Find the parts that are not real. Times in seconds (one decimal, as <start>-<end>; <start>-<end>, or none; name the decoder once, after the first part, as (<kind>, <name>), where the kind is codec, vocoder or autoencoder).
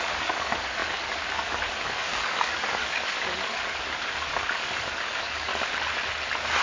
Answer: 0.0-5.5 (codec, DAC)